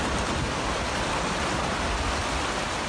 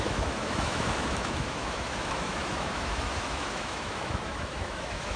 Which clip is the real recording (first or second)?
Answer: first